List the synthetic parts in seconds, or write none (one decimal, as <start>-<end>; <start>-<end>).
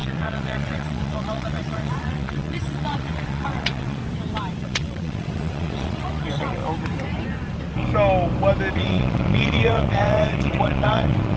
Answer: 0.0-4.0; 4.6-6.6; 8.7-11.4